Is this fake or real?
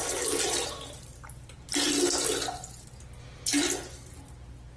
real